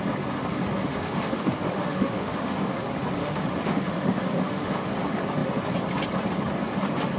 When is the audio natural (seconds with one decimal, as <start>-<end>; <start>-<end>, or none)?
0.0-0.9; 2.8-3.2; 4.9-7.2